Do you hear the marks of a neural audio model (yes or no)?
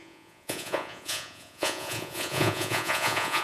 yes